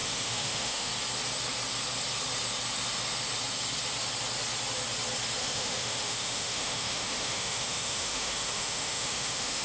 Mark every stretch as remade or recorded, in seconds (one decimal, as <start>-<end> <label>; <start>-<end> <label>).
0.0-0.9 remade; 0.9-5.4 recorded; 5.4-9.6 remade